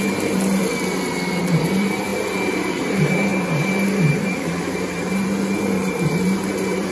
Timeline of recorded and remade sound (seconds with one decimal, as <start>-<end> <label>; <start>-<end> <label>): 0.0-0.6 remade; 0.6-1.4 recorded; 1.4-3.3 remade; 3.3-4.1 recorded; 4.1-6.9 remade